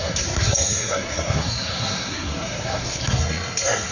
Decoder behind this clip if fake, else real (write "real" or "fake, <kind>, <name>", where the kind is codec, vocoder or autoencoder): fake, codec, SNAC